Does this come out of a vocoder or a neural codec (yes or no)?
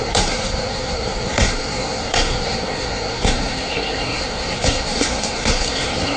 yes